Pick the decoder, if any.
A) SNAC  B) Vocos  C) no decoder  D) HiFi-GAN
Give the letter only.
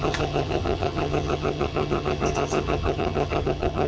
D